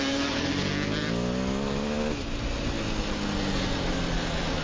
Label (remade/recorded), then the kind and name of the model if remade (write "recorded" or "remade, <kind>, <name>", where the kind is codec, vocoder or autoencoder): recorded